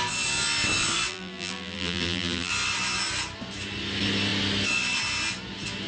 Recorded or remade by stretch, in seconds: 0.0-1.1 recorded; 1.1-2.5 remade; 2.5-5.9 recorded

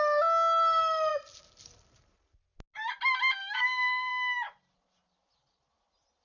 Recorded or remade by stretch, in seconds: 0.0-3.4 recorded; 3.4-4.1 remade; 4.1-6.2 recorded

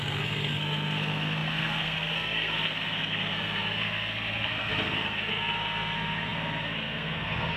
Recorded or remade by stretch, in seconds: 0.0-7.6 remade

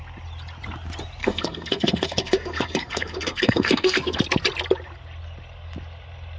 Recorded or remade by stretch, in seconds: 0.0-1.2 recorded; 1.2-4.2 remade; 4.2-6.4 recorded

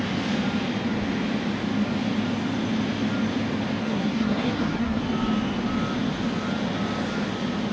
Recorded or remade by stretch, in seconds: 0.0-3.8 recorded; 3.8-5.0 remade; 5.0-7.7 recorded